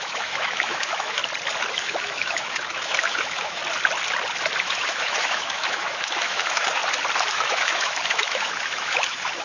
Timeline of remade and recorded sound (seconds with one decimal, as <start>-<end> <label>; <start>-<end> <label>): 0.0-1.2 remade; 1.2-1.7 recorded; 1.7-3.6 remade; 3.6-4.6 recorded; 4.6-6.8 remade; 6.8-7.3 recorded; 7.3-9.4 remade